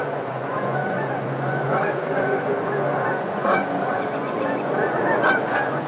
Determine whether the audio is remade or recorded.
remade